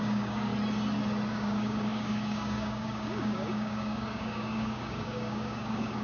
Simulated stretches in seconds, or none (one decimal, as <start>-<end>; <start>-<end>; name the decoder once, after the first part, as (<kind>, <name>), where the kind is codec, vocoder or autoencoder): 0.0-0.5 (codec, DAC); 1.3-6.0